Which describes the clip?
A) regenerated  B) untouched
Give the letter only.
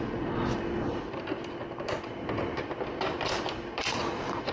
B